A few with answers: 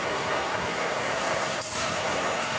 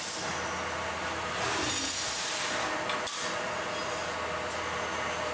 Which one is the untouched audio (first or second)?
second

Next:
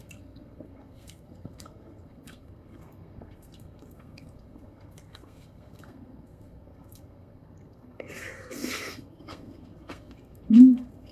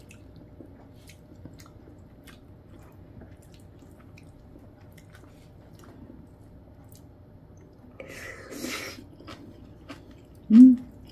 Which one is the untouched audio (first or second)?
second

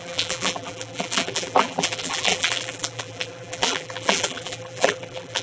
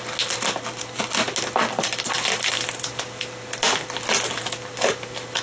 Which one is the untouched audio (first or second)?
second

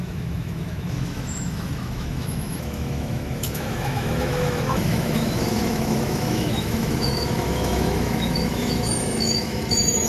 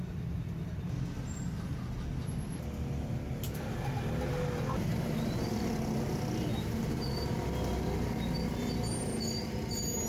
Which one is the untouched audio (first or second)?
second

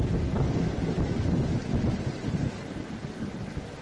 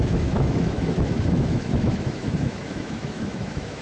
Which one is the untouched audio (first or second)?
first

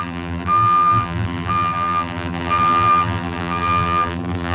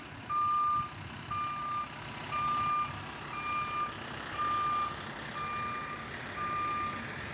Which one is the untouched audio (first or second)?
second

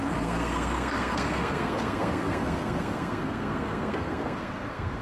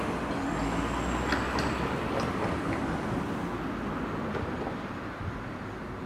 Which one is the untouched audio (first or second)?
second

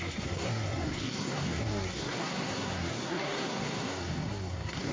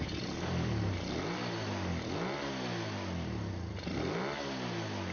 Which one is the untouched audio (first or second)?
second